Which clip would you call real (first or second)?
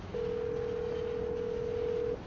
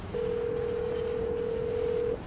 first